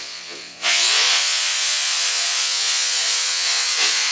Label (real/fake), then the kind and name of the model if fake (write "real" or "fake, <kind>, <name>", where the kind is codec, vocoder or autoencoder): fake, vocoder, Vocos